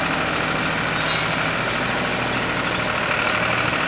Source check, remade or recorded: recorded